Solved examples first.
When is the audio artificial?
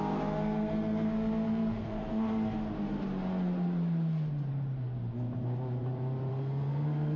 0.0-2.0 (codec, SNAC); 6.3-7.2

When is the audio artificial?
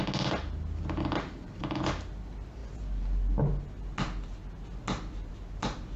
none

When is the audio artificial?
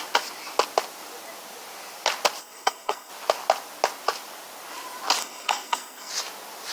2.4-3.1 (codec, SNAC); 5.2-6.1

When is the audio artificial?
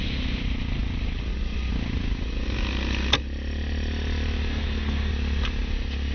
4.5-5.1 (codec, SNAC)